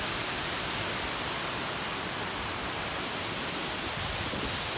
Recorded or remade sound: recorded